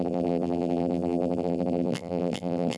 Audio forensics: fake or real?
fake